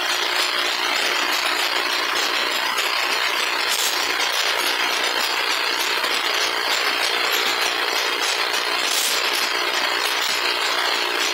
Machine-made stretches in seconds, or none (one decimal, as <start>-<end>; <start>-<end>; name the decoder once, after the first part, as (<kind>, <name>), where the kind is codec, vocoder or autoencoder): none